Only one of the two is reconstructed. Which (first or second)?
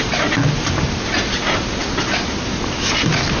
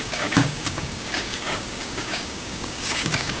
second